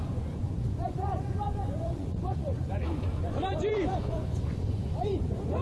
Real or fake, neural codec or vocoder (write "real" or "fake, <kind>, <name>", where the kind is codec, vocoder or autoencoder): fake, vocoder, Vocos